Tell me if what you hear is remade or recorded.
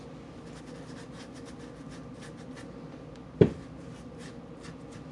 recorded